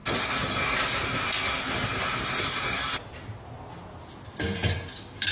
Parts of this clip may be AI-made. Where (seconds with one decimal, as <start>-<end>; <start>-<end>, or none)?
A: none